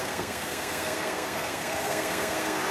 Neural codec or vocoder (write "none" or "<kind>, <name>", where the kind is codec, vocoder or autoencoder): codec, SNAC